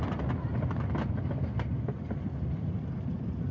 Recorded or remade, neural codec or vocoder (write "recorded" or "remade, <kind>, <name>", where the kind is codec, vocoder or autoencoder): recorded